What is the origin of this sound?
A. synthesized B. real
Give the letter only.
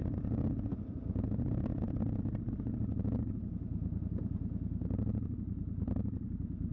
A